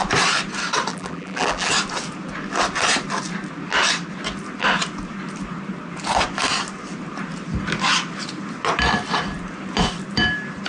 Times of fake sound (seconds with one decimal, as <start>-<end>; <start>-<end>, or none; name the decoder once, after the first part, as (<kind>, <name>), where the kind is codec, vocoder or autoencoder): 0.9-1.7 (vocoder, BigVGAN v2)